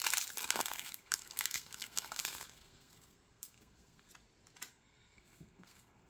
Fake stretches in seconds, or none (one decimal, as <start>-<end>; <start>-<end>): 0.4-4.1; 4.7-6.1